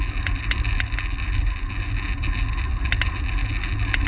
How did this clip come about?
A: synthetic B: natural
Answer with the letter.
B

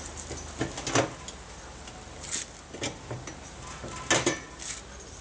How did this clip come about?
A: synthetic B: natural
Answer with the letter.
B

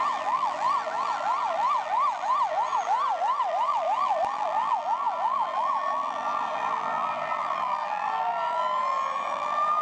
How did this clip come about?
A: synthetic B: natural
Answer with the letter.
A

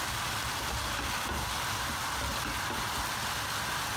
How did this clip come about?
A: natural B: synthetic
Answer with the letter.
A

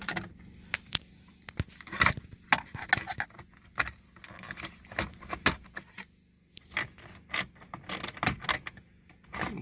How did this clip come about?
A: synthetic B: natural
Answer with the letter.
B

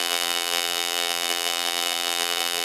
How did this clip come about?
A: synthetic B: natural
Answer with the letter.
A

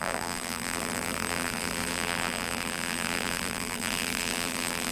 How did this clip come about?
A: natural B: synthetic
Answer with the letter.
B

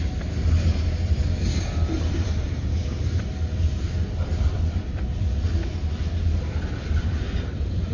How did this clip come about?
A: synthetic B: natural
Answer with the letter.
A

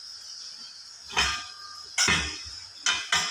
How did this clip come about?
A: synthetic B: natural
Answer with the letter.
B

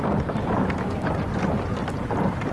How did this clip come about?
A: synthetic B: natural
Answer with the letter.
A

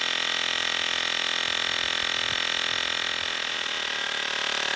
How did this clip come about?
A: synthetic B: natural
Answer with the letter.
B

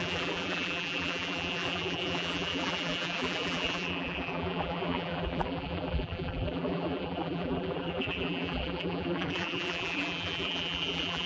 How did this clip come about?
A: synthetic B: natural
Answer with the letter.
A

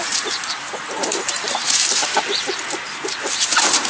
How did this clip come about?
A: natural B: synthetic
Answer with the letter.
B